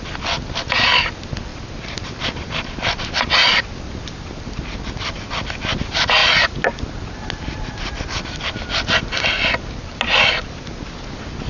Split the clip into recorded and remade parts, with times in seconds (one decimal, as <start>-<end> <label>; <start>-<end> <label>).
0.0-1.5 recorded; 1.5-3.6 remade; 3.6-11.5 recorded